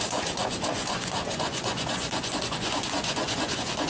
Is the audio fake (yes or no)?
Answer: yes